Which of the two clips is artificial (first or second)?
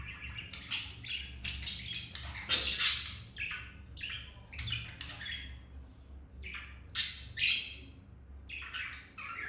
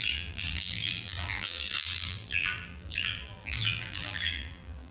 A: second